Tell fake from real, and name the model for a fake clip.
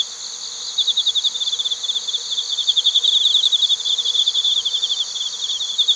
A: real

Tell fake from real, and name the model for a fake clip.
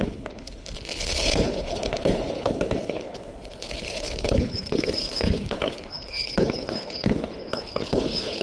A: fake, codec, HILCodec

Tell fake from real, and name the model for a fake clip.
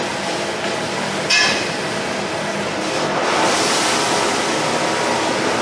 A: real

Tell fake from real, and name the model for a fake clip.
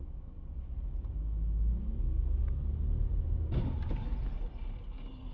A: real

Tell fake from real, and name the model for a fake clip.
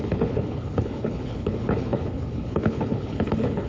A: fake, codec, HILCodec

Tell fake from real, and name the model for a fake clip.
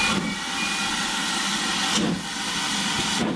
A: real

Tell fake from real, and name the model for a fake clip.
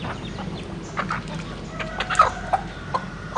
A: real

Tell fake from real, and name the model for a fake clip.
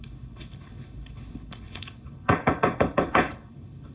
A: fake, codec, HILCodec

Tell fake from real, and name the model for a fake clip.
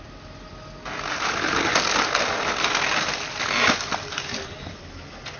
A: real